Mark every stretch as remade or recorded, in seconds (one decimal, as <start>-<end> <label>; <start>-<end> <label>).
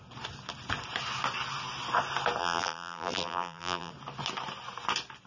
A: 0.0-2.4 recorded; 2.4-3.9 remade; 3.9-5.3 recorded